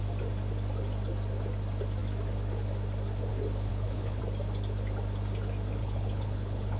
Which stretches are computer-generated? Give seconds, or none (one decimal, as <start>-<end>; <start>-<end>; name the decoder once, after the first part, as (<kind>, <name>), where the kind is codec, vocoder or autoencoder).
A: 3.7-4.2 (codec, HILCodec); 5.8-6.8